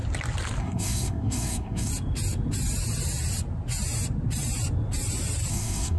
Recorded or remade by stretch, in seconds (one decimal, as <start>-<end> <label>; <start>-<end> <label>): 0.0-0.6 recorded; 0.6-1.9 remade; 1.9-5.5 recorded; 5.5-6.0 remade